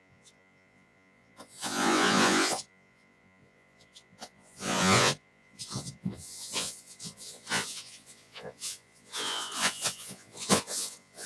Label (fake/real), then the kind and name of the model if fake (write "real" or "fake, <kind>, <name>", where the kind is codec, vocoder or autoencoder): fake, vocoder, Vocos